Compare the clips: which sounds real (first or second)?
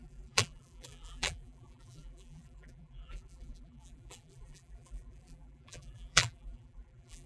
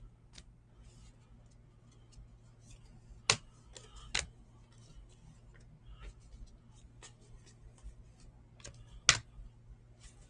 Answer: second